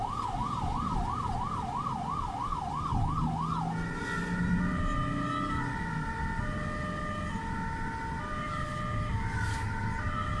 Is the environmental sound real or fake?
real